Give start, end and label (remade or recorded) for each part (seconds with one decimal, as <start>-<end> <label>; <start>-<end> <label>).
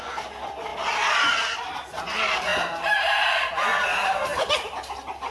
0.0-5.3 recorded